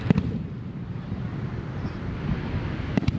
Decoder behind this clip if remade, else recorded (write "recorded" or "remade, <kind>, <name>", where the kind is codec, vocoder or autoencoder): recorded